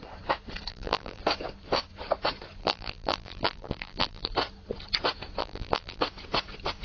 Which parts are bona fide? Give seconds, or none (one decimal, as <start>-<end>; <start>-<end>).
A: 0.0-0.7; 1.2-2.6; 4.3-5.4; 6.0-6.8

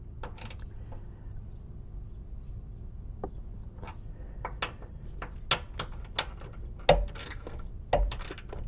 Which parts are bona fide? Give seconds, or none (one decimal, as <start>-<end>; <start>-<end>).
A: 0.0-7.2; 7.7-8.7

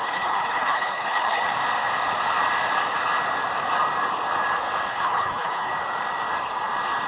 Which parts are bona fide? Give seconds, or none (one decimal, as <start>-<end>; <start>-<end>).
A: 1.5-4.9; 5.7-7.1

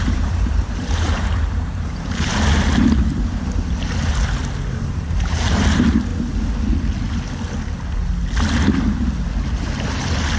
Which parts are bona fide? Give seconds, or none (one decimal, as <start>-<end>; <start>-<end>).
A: 2.3-4.7; 6.1-10.4